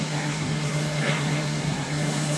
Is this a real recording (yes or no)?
no